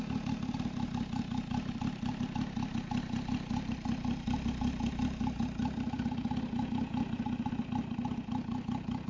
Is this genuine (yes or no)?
yes